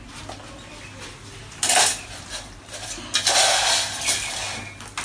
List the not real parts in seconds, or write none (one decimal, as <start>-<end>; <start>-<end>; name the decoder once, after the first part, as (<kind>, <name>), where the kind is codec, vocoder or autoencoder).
none